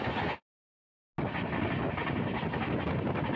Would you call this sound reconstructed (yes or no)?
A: no